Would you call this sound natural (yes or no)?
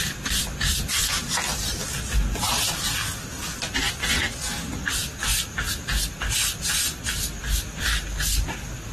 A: yes